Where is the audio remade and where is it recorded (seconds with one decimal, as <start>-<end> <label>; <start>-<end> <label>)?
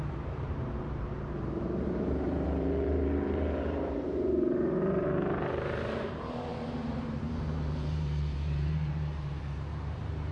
0.0-10.3 remade